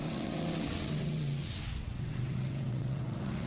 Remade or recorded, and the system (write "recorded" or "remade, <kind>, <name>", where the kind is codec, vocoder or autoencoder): remade, vocoder, WaveNeXt